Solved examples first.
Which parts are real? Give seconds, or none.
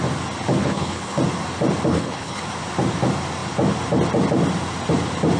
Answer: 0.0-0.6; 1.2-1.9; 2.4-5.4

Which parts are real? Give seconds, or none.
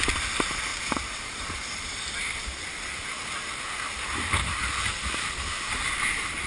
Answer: 0.0-0.7; 2.4-6.5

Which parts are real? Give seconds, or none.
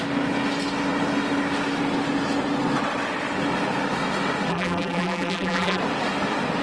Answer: 0.0-4.5; 5.8-6.6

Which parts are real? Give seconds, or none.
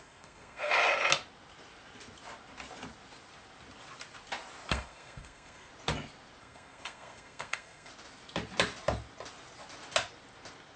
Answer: 0.7-4.7; 5.7-6.4; 7.9-10.8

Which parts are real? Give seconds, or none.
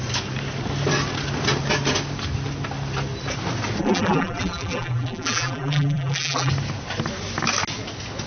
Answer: 0.0-3.8; 6.5-8.3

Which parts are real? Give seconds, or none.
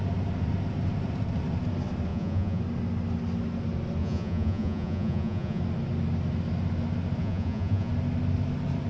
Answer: 0.0-2.1; 2.6-4.0; 5.6-7.2; 7.9-8.9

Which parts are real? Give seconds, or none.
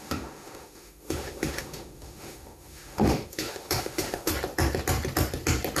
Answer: 4.3-5.8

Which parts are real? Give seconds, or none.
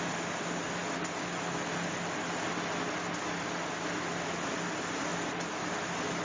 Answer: 0.0-6.2